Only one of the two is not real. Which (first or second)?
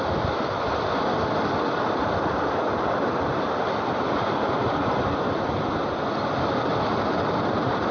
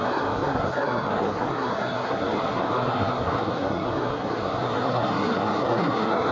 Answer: second